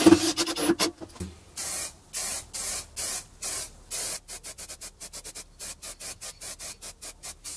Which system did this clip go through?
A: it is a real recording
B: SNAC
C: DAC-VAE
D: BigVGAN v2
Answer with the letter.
A